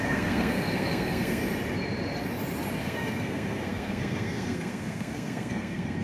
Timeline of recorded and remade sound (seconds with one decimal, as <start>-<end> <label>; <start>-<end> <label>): 0.0-1.4 remade; 1.4-2.8 recorded; 2.8-6.0 remade